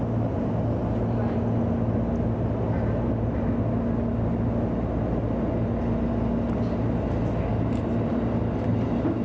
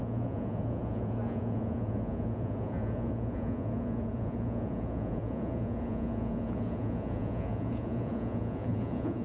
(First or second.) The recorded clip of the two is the first